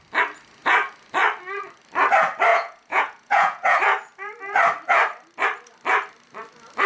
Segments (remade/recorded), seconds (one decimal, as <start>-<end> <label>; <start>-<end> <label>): 0.0-2.5 recorded; 2.5-3.8 remade; 3.8-6.9 recorded